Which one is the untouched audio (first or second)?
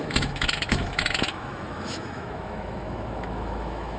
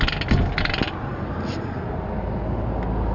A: second